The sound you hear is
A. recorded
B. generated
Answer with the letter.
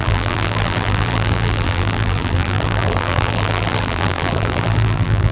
B